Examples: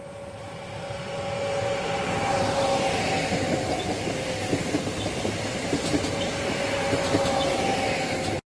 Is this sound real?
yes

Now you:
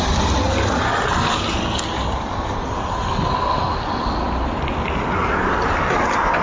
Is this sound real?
yes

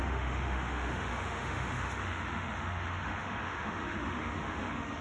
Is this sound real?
no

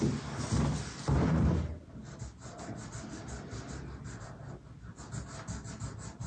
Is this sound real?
yes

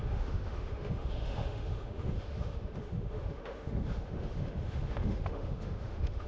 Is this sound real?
no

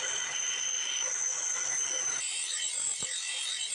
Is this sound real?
yes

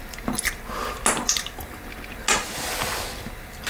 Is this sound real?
yes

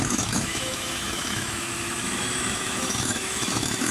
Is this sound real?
no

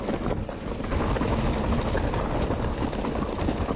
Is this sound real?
yes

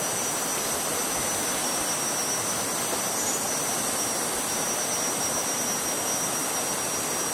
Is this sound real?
yes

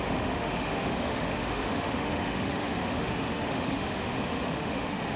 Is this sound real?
no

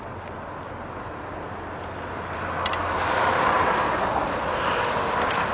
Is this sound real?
yes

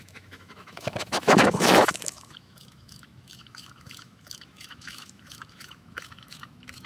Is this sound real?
no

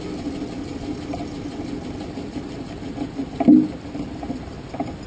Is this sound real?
yes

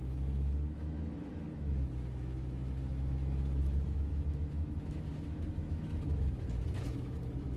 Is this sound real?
no